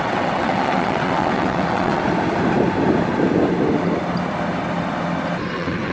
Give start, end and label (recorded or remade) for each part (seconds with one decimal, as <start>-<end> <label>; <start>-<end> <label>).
0.0-2.0 remade; 2.0-5.5 recorded; 5.5-5.9 remade

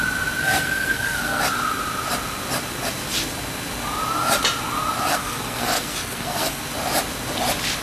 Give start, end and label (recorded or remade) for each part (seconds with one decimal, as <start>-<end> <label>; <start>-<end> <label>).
0.0-0.4 recorded; 0.4-1.4 remade; 1.4-5.1 recorded; 5.1-6.6 remade; 6.6-7.8 recorded

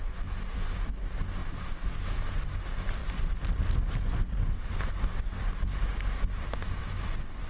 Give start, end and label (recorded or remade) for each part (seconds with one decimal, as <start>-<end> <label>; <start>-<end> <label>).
0.0-7.5 recorded

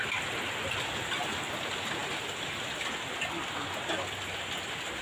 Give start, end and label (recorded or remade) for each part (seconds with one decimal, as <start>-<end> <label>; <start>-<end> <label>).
0.0-5.0 recorded

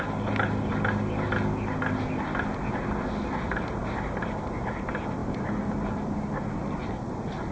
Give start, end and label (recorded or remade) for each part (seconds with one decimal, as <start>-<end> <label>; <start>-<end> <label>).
0.0-7.5 recorded

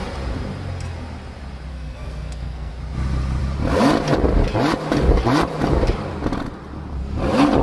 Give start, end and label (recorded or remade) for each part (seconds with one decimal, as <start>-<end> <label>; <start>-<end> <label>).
0.0-1.7 recorded; 1.7-2.7 remade; 2.7-7.6 recorded

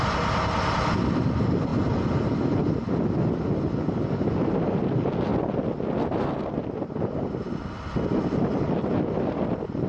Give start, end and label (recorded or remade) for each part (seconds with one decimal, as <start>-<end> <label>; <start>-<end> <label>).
0.0-9.9 recorded

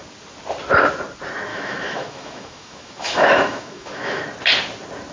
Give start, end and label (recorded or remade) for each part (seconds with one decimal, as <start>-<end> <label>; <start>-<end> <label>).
0.0-1.5 recorded; 1.5-4.2 remade; 4.2-5.1 recorded